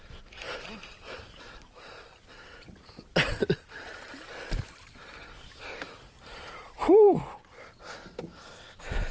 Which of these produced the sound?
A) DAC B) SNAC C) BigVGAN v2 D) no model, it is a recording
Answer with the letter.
D